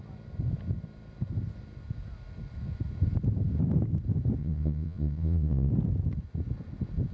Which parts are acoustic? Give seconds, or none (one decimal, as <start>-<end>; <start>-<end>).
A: 0.0-4.4; 5.7-7.1